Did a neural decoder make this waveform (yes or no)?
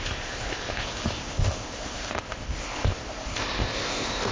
yes